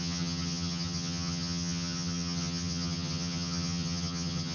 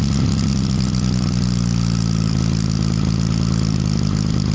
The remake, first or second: first